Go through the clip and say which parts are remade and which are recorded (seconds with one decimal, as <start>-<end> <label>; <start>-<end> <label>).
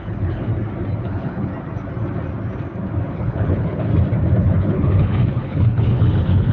0.0-0.5 remade; 0.5-1.0 recorded; 1.0-1.5 remade; 1.5-3.1 recorded; 3.1-3.9 remade; 3.9-4.4 recorded; 4.4-6.5 remade